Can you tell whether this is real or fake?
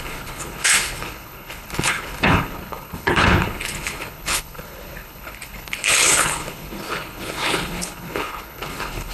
fake